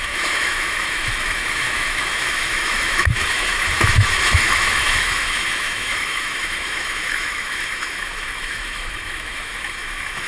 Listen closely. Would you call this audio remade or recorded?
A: remade